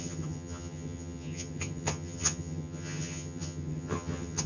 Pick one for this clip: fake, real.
fake